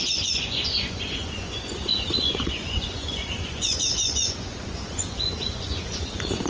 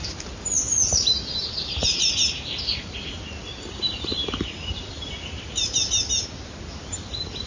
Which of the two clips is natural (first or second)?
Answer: second